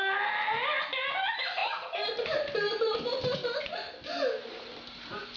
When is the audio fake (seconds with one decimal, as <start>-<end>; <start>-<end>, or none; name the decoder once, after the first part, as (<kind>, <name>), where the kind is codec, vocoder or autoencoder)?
1.6-3.6 (vocoder, BigVGAN v2)